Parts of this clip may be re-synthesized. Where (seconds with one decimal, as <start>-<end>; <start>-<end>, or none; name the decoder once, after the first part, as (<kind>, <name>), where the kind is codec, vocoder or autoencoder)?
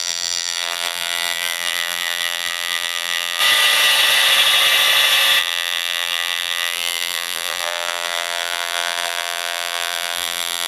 0.0-3.4 (vocoder, BigVGAN v2); 5.4-10.7